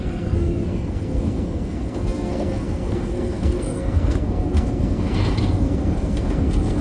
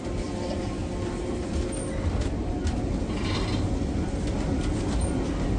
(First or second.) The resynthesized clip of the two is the first